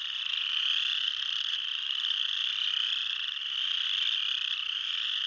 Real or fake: real